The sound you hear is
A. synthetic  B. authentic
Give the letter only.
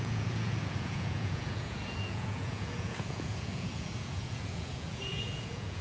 A